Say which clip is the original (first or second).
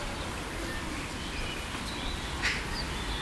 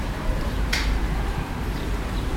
first